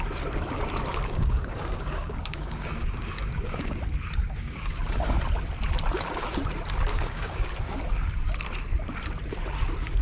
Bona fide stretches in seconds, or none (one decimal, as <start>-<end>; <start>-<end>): 0.0-0.9; 3.8-4.2; 5.1-6.9; 7.5-10.0